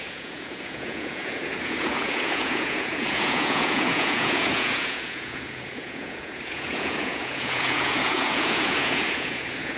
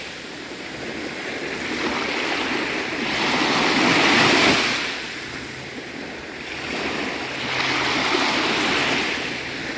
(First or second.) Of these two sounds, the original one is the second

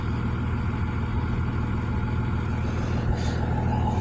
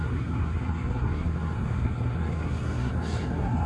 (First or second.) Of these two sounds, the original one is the first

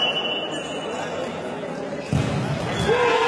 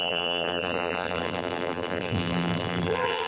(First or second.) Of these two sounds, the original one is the first